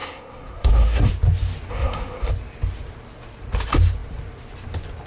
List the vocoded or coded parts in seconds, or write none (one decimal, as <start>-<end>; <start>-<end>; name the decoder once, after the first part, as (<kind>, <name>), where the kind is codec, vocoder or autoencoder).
0.0-1.1 (codec, SNAC); 1.7-2.3